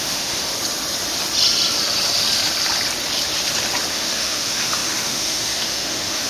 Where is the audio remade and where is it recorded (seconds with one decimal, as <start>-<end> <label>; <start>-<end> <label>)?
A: 0.0-0.5 remade; 0.5-3.9 recorded; 3.9-6.3 remade